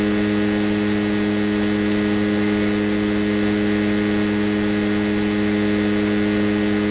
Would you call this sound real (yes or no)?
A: yes